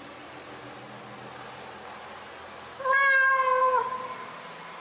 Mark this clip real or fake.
real